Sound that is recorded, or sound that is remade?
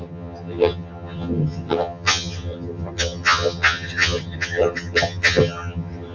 remade